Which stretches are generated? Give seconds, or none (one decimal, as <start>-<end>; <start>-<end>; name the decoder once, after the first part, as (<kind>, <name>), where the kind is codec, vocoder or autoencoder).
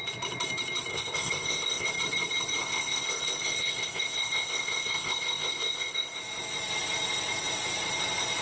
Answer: 0.9-1.9 (codec, ZipCodec); 2.6-6.2